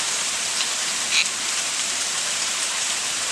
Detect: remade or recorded remade